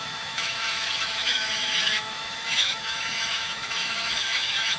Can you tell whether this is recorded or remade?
remade